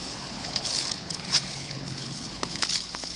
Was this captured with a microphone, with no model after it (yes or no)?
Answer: no